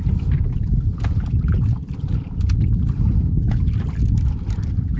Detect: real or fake real